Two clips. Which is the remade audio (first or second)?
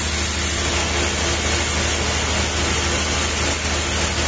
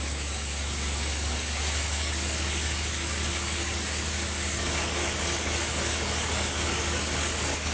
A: second